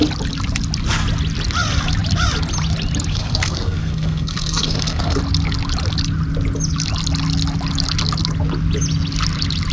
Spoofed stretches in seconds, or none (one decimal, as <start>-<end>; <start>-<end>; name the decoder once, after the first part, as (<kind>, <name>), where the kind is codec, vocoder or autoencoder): 3.1-5.2 (codec, SNAC)